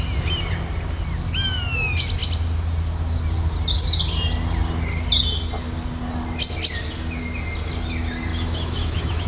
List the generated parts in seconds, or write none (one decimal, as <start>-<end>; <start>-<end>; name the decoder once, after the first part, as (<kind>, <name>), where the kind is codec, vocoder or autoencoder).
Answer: 8.3-9.3 (autoencoder, DAC-VAE)